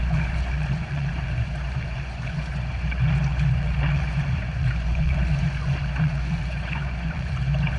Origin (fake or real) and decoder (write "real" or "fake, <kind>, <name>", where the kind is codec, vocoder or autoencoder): fake, vocoder, Vocos